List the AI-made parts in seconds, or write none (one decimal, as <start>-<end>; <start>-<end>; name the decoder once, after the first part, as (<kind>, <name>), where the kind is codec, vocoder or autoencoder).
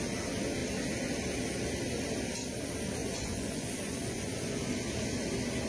3.0-4.6 (vocoder, Vocos)